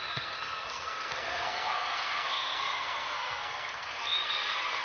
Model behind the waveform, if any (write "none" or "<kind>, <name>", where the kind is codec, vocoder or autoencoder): codec, SNAC